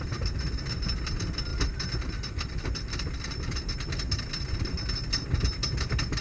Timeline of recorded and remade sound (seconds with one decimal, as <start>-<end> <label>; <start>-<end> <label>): 0.0-6.2 recorded